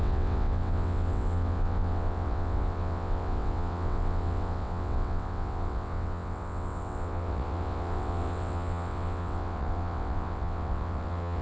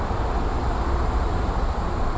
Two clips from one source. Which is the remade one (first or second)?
first